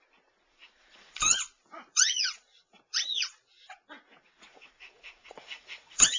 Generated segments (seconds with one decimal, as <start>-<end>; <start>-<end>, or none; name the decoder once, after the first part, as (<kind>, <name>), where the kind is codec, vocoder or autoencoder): 0.0-6.2 (vocoder, Vocos)